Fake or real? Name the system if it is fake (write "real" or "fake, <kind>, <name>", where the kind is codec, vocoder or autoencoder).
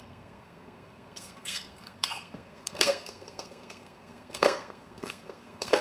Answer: fake, codec, SNAC